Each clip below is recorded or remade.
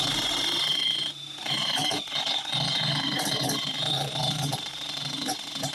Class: recorded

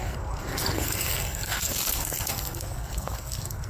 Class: remade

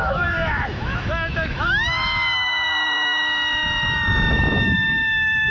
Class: remade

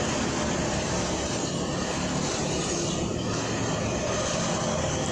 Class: recorded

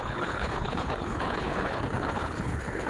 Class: remade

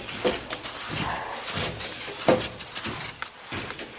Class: recorded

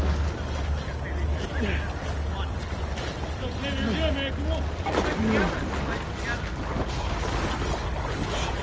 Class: recorded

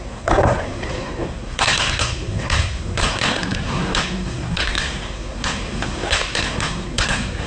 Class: remade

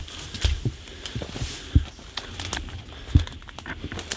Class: recorded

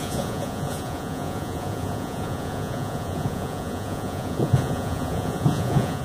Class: remade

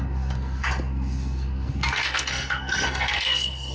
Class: remade